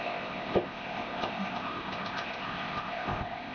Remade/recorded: remade